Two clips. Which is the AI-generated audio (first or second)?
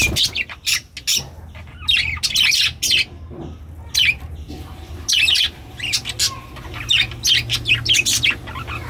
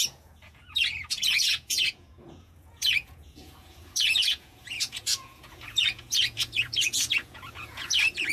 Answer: second